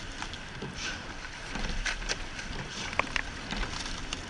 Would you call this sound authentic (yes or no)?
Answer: yes